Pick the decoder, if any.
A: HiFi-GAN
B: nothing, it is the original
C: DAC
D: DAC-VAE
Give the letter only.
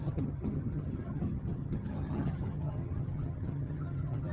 A